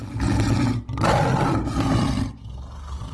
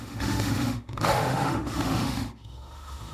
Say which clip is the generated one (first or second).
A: second